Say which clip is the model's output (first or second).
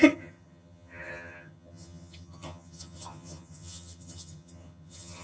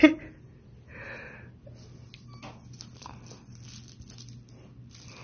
first